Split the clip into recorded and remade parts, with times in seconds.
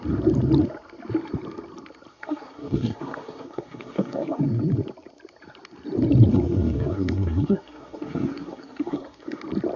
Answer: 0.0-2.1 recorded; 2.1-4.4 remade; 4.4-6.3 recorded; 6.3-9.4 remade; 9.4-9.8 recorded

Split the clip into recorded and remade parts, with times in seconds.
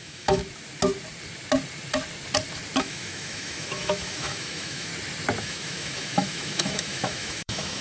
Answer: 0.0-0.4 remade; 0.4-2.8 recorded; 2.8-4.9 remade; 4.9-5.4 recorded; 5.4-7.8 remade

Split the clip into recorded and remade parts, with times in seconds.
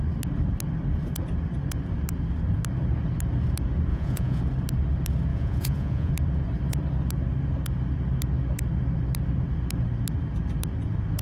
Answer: 0.0-3.9 recorded; 3.9-4.4 remade; 4.4-5.3 recorded; 5.3-6.1 remade; 6.1-11.2 recorded